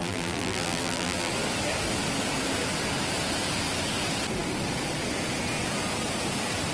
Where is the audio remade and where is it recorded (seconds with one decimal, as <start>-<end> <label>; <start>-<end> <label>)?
0.0-1.3 remade; 1.3-6.7 recorded